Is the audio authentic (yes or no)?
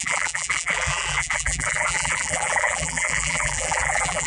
no